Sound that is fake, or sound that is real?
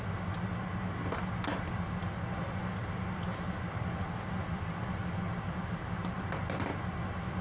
real